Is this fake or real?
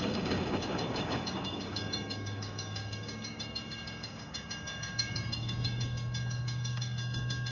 fake